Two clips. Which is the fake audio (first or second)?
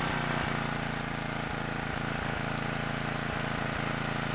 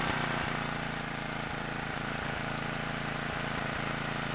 second